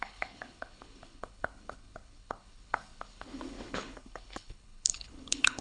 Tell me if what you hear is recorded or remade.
remade